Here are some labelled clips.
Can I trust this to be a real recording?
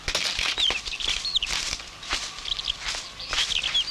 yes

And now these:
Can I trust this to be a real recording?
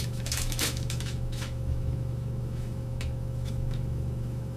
no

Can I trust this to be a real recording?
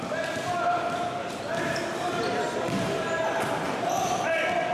yes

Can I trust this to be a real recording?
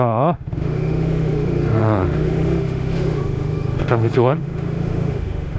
no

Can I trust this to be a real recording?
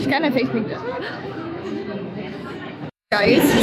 no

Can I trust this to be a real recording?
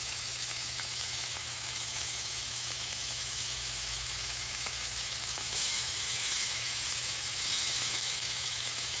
no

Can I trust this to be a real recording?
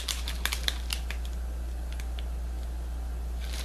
yes